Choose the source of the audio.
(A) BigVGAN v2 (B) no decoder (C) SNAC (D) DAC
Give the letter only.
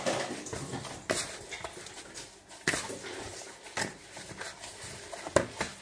B